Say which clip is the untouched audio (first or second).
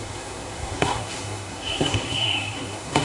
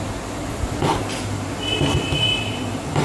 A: second